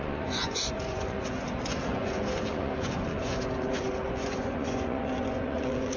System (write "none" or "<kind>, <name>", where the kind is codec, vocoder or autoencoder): vocoder, Vocos